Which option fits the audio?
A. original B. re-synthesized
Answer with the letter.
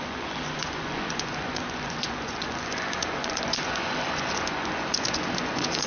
B